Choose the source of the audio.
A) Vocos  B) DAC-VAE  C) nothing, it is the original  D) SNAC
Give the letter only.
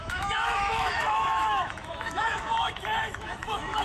B